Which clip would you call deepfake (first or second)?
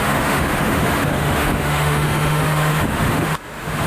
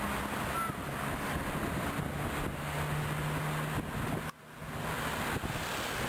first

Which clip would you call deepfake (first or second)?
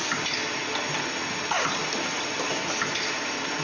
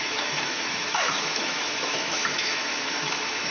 second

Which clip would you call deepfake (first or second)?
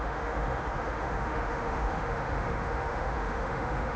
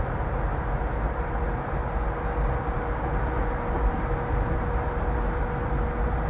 first